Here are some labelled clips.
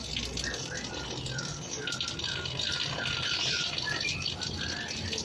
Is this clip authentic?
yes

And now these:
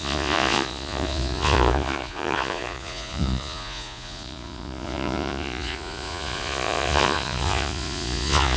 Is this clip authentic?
no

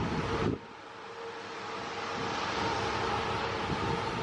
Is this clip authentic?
yes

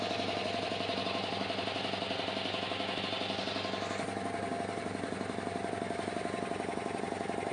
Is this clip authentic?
yes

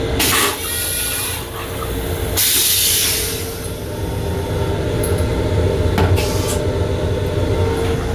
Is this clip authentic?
yes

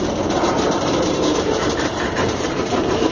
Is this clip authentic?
no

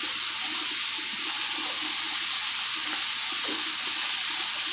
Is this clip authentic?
yes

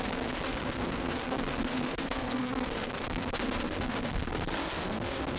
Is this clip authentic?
no